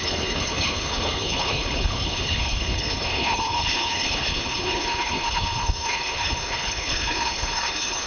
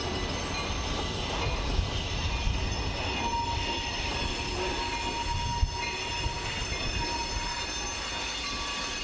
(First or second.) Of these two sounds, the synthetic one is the first